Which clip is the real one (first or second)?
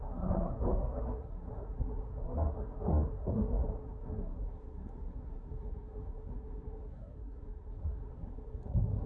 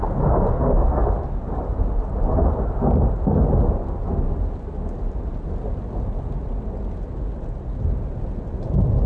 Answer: second